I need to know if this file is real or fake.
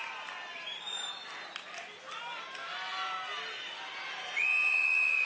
real